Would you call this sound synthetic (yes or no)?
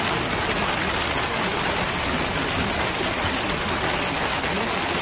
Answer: no